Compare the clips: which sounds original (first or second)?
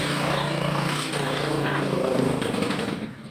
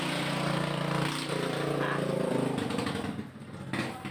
second